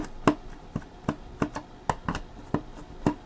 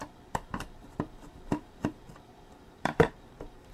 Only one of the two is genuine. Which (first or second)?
first